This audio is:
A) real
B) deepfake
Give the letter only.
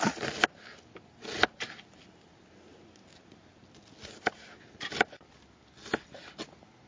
A